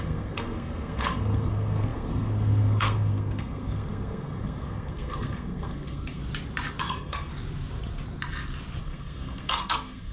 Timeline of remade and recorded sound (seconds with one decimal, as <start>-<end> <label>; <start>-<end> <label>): 0.0-6.2 remade; 6.2-6.8 recorded; 6.8-7.3 remade; 7.3-8.8 recorded; 8.8-10.1 remade